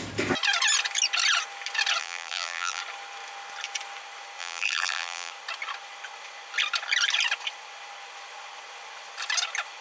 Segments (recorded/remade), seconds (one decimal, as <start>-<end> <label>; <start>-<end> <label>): 0.0-2.0 recorded; 2.0-2.8 remade; 2.8-4.4 recorded; 4.4-5.3 remade; 5.3-9.8 recorded